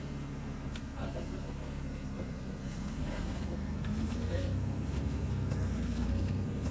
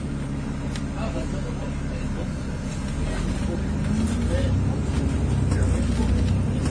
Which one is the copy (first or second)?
first